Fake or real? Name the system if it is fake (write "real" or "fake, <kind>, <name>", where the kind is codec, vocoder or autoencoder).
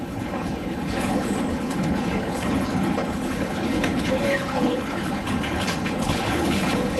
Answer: fake, codec, HILCodec